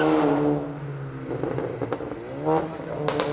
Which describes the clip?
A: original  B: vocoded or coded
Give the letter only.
A